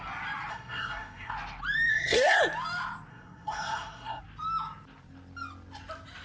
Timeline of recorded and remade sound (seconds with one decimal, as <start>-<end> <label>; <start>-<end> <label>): 0.0-0.5 recorded; 0.5-1.3 remade; 1.3-1.9 recorded; 1.9-2.4 remade; 2.4-3.1 recorded; 3.1-4.2 remade; 4.2-6.2 recorded